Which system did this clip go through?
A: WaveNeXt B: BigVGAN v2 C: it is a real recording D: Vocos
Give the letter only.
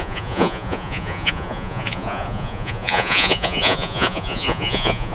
D